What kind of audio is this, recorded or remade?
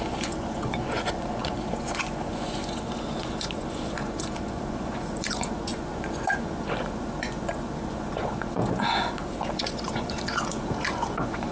remade